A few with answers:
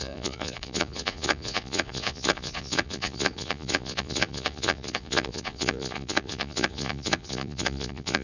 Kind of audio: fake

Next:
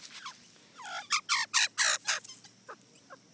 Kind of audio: real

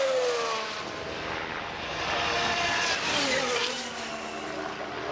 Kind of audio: real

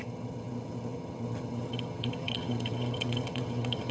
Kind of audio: fake